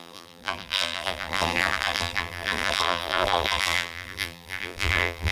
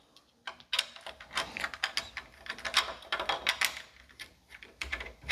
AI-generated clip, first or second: first